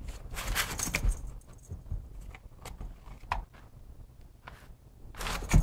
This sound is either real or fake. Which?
real